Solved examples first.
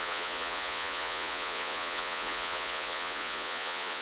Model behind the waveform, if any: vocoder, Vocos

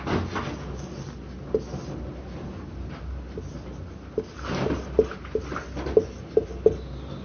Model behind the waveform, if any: none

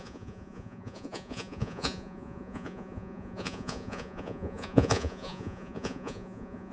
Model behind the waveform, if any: vocoder, Vocos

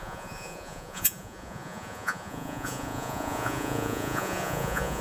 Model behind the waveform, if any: vocoder, Vocos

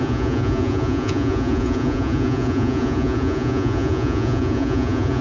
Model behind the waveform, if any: vocoder, Vocos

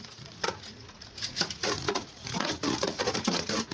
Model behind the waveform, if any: vocoder, Vocos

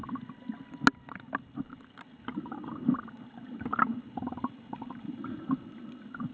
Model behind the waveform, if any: none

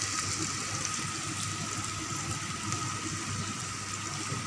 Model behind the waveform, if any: none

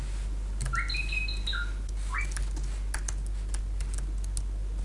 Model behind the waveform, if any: none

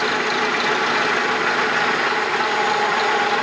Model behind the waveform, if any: none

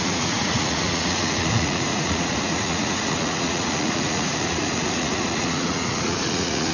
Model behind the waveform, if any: vocoder, Vocos